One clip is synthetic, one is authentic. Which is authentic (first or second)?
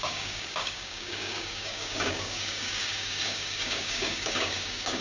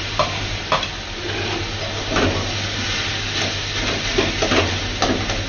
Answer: second